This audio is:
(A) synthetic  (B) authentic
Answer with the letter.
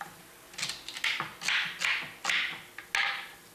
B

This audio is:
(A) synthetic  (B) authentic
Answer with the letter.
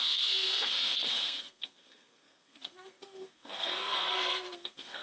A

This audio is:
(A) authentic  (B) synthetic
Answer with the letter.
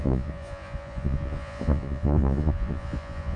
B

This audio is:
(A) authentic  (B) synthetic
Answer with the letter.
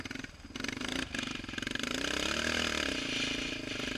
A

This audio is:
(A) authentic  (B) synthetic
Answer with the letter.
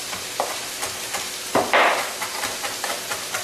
A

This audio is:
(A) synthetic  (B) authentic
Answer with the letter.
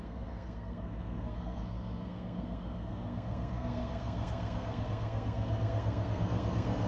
A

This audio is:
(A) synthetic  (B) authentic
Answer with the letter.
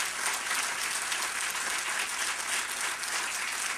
B